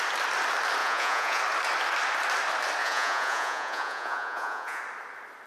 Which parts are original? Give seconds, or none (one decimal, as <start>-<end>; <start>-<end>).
0.0-0.8; 1.4-2.8; 4.8-5.5

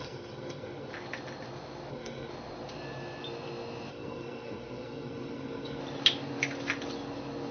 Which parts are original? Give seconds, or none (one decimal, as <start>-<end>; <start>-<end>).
0.9-1.9; 2.3-3.9; 5.8-7.5

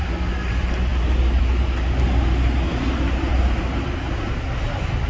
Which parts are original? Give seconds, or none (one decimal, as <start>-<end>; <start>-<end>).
0.0-5.1

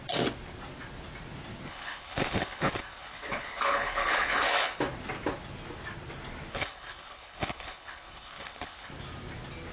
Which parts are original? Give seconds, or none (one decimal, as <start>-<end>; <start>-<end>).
0.0-1.7; 4.8-6.5; 8.9-9.7